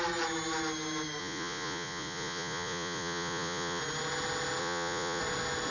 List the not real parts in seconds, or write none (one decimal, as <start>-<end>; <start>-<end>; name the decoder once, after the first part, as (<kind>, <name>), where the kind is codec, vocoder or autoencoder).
1.2-3.8 (vocoder, Vocos); 4.6-5.2